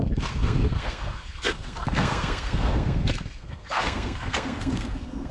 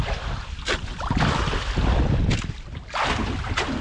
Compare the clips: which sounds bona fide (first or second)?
second